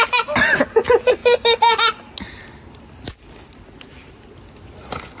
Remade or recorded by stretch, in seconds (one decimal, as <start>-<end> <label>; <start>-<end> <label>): 0.0-5.2 recorded